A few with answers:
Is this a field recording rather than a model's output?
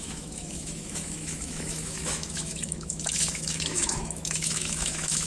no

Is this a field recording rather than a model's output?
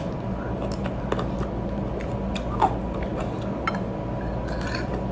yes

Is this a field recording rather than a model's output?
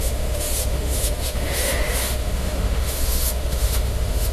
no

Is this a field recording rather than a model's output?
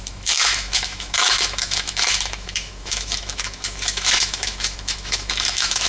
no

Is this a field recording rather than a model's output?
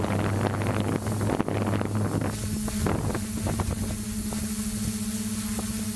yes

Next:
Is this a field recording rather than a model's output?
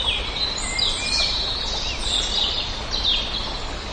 yes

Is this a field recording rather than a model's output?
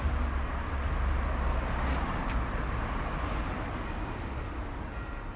yes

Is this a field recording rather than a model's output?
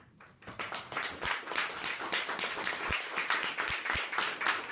yes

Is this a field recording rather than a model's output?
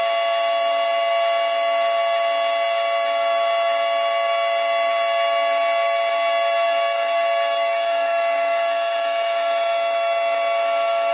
no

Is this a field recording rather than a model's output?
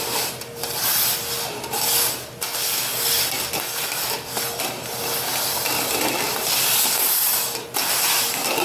yes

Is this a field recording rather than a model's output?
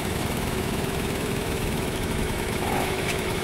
no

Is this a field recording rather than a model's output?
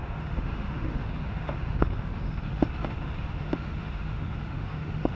no